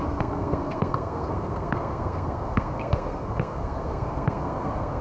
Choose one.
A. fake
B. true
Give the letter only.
A